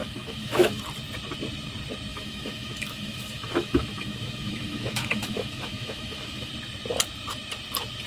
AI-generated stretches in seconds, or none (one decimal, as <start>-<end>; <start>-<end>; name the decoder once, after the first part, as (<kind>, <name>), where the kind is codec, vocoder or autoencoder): 0.0-0.8 (autoencoder, DAC-VAE); 2.1-6.5